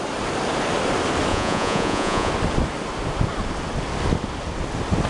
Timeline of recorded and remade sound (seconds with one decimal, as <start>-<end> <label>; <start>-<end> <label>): 0.0-1.3 recorded; 1.3-2.3 remade; 2.3-5.1 recorded